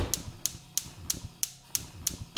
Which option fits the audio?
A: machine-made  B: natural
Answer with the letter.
B